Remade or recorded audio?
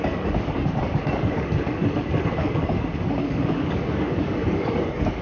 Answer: remade